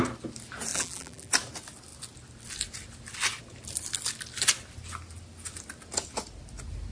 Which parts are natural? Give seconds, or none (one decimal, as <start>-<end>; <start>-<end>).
0.0-0.7; 1.3-6.9